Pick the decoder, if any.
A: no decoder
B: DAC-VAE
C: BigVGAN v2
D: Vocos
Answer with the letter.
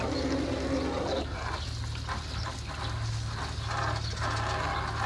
A